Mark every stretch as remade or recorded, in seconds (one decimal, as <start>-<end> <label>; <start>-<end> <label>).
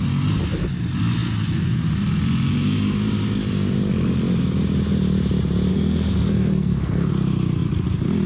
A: 0.0-5.7 recorded; 5.7-7.1 remade; 7.1-8.3 recorded